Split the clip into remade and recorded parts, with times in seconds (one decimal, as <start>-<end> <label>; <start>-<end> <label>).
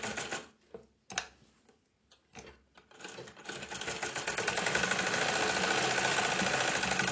0.0-3.4 recorded; 3.4-5.1 remade; 5.1-7.1 recorded